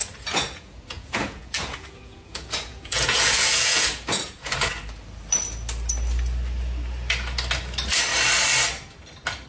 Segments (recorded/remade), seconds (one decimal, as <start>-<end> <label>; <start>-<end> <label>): 0.0-4.7 remade; 4.7-9.5 recorded